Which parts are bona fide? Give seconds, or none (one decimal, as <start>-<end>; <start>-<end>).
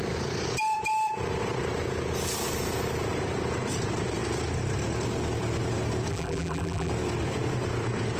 0.0-6.1; 6.9-8.2